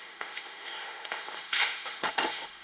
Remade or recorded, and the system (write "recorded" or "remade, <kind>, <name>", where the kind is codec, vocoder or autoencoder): remade, autoencoder, DAC-VAE